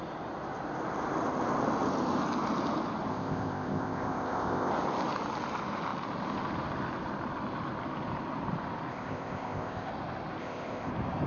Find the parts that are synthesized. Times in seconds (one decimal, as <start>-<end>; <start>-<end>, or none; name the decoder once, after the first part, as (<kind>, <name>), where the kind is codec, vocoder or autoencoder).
3.1-4.7 (codec, ZipCodec); 8.9-9.9; 10.4-10.9